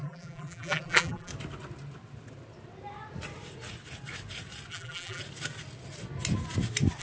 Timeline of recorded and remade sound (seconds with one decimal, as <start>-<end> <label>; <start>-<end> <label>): 0.0-1.3 remade; 1.3-4.7 recorded; 4.7-5.2 remade; 5.2-7.0 recorded